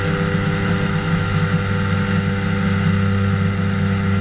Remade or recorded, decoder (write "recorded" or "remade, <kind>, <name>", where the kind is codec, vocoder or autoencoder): recorded